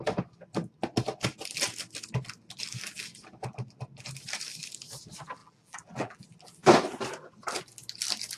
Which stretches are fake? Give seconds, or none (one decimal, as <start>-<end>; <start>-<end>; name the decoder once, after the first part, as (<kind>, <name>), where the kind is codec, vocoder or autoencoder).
5.4-6.2 (vocoder, BigVGAN v2)